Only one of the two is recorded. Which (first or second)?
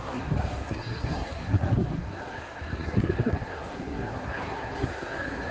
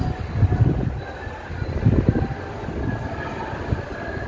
second